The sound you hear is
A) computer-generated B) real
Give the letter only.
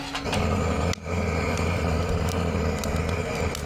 B